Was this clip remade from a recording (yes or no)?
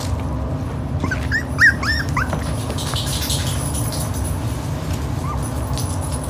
no